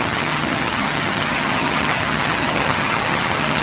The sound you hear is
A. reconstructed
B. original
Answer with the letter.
A